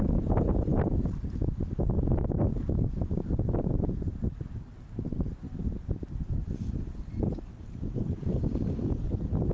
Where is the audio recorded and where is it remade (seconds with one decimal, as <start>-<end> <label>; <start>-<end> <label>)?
0.0-9.5 recorded